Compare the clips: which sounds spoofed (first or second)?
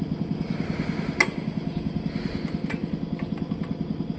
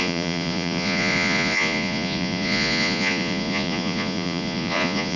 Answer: second